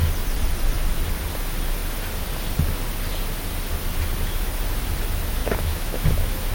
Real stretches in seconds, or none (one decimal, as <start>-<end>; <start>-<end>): 0.0-5.4

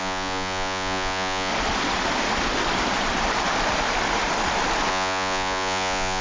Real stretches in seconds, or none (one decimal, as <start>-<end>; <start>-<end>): 1.5-4.9

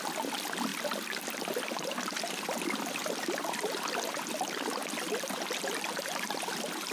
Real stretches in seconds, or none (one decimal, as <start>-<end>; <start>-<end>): 0.0-6.9

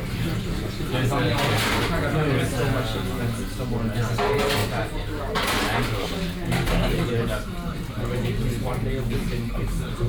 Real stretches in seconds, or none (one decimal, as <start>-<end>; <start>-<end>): 0.0-10.1

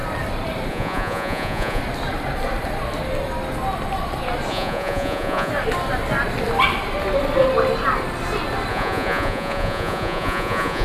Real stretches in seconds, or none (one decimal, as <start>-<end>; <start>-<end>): 0.0-0.7; 1.8-4.5; 5.5-8.7

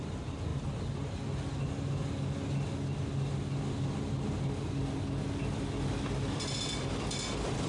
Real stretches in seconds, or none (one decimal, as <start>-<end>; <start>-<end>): 0.0-7.7